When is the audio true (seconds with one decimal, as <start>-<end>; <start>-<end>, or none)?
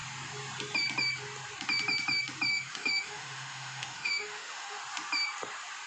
0.0-2.5; 4.8-5.9